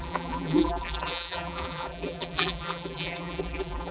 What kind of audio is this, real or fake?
fake